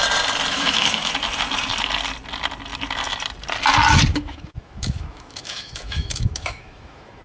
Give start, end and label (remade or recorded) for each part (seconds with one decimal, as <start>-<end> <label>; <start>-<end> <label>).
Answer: 0.0-0.5 recorded; 0.5-1.1 remade; 1.1-4.1 recorded; 4.1-7.2 remade